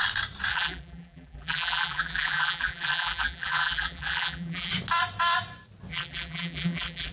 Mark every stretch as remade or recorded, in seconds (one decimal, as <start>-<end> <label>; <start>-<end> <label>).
0.0-0.5 recorded; 0.5-4.7 remade; 4.7-5.9 recorded; 5.9-7.1 remade